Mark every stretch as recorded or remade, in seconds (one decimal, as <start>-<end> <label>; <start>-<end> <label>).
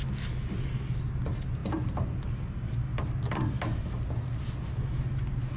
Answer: 0.0-5.6 recorded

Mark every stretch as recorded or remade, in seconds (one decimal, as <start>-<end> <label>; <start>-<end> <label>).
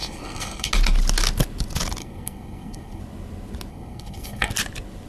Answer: 0.0-0.7 remade; 0.7-2.0 recorded; 2.0-3.0 remade; 3.0-3.7 recorded; 3.7-4.5 remade; 4.5-5.1 recorded